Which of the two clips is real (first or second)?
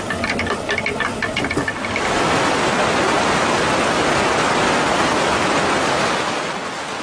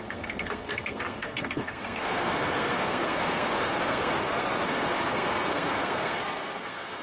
first